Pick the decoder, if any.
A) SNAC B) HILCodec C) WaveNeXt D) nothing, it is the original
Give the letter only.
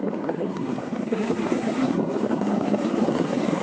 A